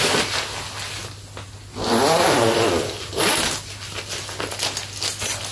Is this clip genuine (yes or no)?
yes